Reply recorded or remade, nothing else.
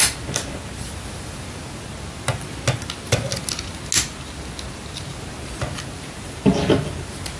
recorded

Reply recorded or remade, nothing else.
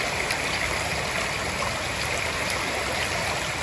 recorded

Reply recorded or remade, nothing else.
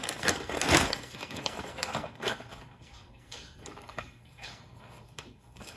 remade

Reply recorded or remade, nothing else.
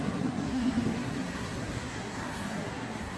remade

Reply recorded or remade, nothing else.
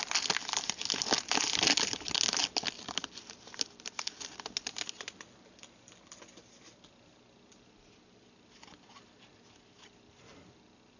recorded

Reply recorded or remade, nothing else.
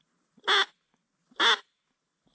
recorded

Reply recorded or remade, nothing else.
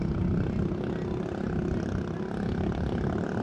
recorded